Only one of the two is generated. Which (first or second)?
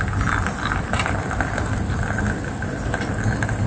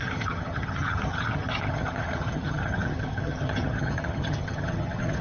second